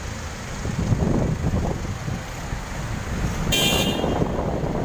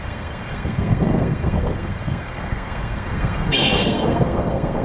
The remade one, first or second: second